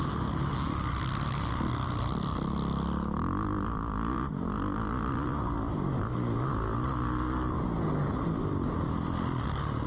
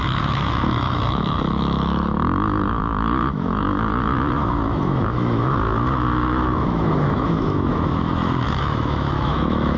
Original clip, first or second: first